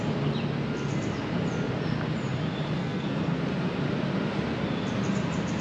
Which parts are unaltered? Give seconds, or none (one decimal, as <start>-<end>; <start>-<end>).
0.0-2.8; 3.4-5.6